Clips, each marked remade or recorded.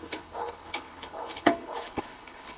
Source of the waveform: remade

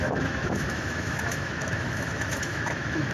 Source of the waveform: remade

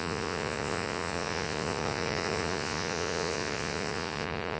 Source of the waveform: remade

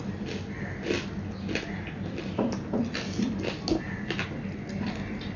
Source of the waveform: recorded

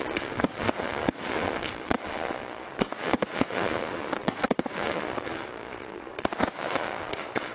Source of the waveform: remade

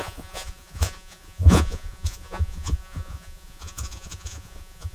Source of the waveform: remade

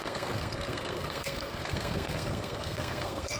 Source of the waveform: remade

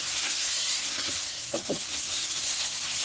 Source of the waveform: remade